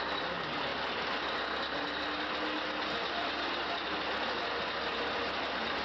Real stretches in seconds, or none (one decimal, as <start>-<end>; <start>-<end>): 0.0-5.8